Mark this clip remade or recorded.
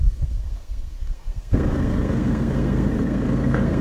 remade